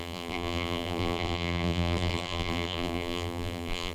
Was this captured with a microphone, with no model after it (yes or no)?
no